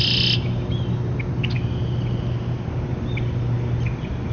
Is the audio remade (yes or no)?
no